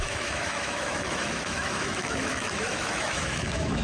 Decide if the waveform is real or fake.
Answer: fake